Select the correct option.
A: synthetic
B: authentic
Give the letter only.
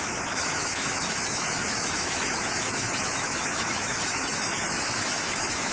A